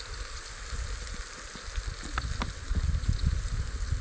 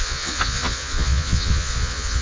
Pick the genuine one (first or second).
first